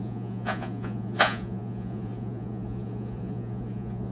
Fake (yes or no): yes